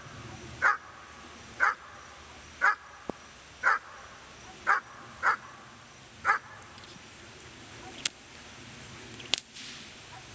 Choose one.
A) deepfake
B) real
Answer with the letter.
B